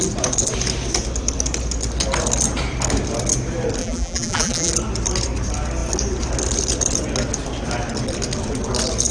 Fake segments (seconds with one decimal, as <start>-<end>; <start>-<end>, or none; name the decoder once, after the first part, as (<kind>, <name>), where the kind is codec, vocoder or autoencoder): 3.8-4.7 (vocoder, BigVGAN v2)